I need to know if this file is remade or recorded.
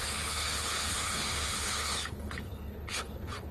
remade